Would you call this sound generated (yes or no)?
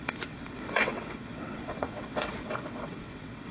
yes